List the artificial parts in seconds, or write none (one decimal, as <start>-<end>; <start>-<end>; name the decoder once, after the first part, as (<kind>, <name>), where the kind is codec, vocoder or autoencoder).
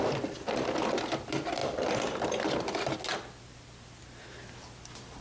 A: none